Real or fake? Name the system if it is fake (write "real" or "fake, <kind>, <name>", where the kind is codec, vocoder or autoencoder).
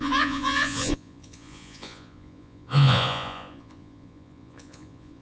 fake, vocoder, Vocos